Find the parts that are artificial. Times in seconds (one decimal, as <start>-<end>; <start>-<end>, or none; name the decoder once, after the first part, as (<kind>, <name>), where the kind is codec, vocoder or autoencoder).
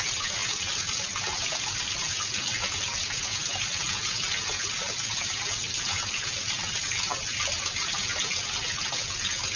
none